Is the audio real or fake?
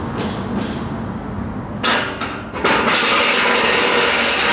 real